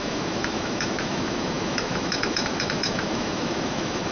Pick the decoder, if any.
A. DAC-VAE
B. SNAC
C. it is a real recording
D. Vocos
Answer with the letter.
A